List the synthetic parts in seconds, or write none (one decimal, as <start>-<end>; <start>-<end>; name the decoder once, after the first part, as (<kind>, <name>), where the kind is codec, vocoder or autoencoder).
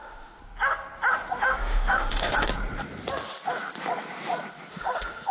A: 0.0-0.4 (autoencoder, DAC-VAE); 1.4-2.5; 4.7-5.3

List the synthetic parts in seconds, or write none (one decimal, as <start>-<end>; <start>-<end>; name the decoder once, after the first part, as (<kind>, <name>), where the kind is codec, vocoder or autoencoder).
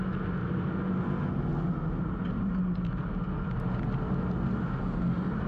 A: 0.4-1.0 (vocoder, BigVGAN v2)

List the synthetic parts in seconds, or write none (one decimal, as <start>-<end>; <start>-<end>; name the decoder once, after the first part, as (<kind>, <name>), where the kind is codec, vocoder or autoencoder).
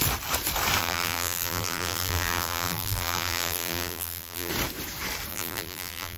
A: 0.8-4.5 (vocoder, BigVGAN v2); 5.3-6.2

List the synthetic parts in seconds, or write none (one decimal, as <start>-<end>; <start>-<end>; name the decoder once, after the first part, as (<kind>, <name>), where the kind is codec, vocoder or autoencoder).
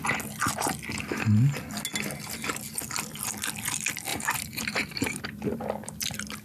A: 4.1-5.2 (vocoder, BigVGAN v2)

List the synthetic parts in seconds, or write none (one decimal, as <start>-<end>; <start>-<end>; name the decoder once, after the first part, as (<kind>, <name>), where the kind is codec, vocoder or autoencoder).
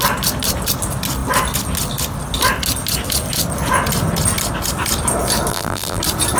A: 5.5-6.0 (vocoder, BigVGAN v2)